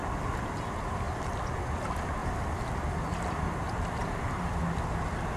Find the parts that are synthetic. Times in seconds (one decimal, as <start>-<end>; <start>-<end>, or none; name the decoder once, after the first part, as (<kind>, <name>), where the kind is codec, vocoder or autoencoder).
2.2-3.0 (vocoder, BigVGAN v2); 4.0-4.6